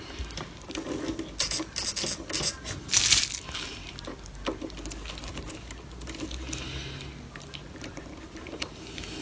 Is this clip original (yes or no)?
yes